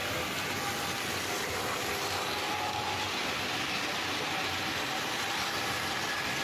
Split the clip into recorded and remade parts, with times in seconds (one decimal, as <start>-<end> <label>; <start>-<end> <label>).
0.0-6.4 recorded